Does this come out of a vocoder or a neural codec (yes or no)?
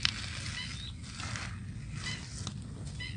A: no